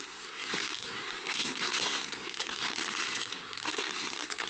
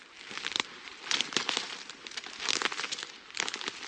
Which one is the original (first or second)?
second